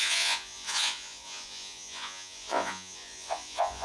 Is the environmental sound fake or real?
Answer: fake